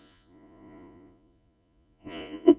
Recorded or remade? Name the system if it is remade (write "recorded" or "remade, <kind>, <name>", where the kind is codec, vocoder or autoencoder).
remade, vocoder, Vocos